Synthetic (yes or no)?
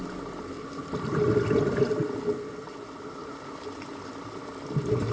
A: no